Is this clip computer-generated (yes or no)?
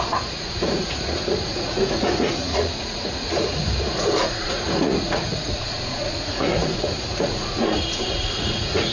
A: yes